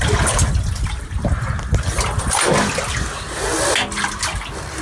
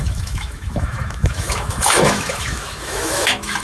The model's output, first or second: second